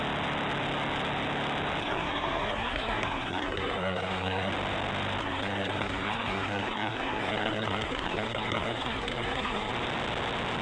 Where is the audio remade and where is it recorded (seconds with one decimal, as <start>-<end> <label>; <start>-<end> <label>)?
0.0-1.8 recorded; 1.8-4.5 remade; 4.5-5.2 recorded; 5.2-9.7 remade; 9.7-10.6 recorded